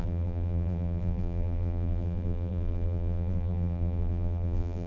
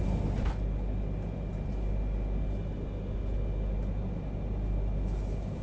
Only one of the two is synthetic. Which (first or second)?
first